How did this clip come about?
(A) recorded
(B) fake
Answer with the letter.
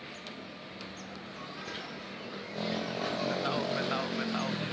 A